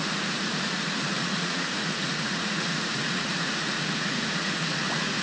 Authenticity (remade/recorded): remade